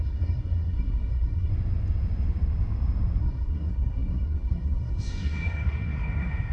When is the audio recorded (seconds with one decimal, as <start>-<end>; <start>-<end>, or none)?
1.5-3.2